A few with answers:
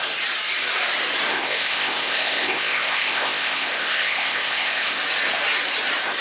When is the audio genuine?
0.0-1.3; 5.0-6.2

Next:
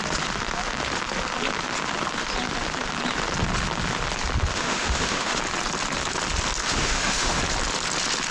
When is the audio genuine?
0.0-4.5; 5.4-6.6; 7.4-8.3

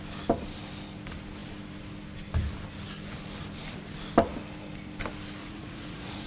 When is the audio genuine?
0.0-5.4

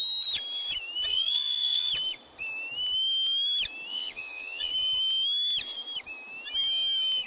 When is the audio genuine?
0.0-1.1; 1.9-3.9; 4.7-7.3